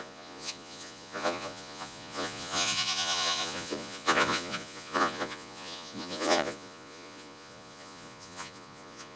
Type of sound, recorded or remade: remade